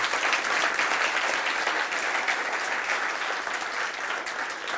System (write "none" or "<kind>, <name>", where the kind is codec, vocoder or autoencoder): none